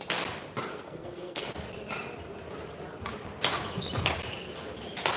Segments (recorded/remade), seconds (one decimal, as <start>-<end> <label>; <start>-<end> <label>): 0.0-0.7 recorded; 0.7-1.5 remade; 1.5-5.2 recorded